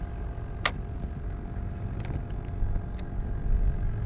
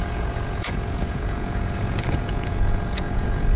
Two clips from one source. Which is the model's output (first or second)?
second